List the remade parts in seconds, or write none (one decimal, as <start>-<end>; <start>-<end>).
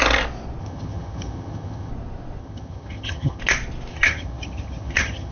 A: 0.6-1.9; 2.4-3.4; 3.9-5.3